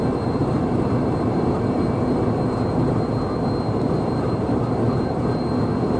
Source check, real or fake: fake